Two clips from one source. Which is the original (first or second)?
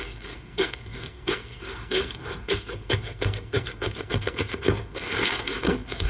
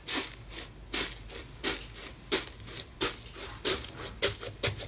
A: second